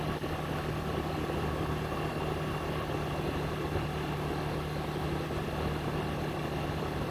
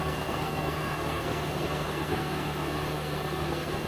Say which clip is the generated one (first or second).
second